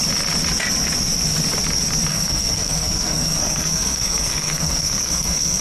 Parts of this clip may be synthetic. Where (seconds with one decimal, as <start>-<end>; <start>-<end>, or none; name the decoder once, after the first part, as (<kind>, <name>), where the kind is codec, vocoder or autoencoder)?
2.1-5.6 (codec, SNAC)